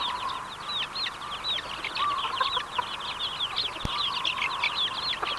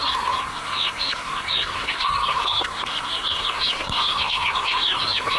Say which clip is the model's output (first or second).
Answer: second